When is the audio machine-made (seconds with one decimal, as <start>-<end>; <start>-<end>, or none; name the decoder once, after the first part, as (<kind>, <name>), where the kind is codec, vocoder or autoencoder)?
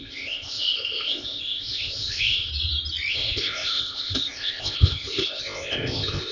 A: 0.0-2.5 (codec, ZipCodec); 3.1-6.3